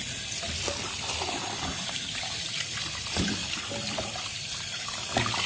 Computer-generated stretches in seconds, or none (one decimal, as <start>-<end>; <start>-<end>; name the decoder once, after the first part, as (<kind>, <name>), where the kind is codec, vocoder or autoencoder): 0.0-2.0 (vocoder, BigVGAN v2); 3.4-4.8